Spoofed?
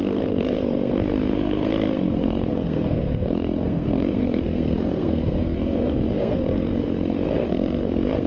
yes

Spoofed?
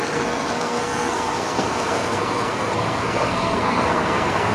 yes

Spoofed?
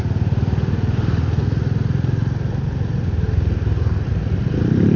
no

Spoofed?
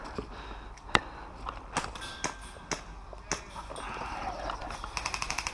no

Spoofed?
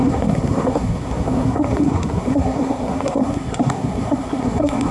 yes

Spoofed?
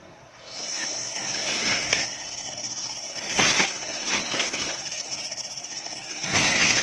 yes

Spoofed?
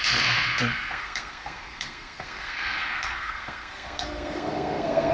yes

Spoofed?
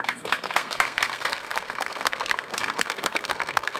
yes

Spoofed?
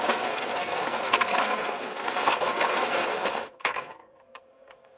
yes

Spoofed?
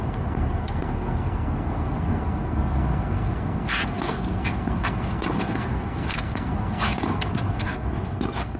yes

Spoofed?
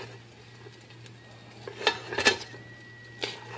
no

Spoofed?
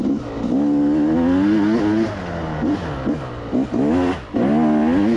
no